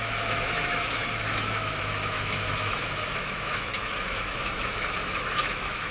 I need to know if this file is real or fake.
fake